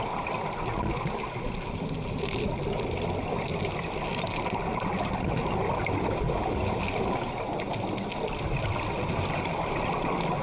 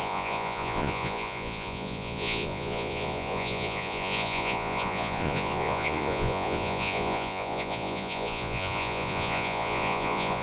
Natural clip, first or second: first